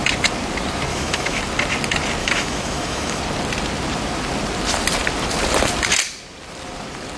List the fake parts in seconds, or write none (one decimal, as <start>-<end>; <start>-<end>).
0.9-1.4; 2.2-3.2